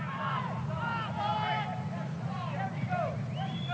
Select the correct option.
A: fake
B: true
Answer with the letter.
B